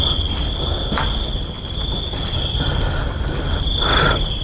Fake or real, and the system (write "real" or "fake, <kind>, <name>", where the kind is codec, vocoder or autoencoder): real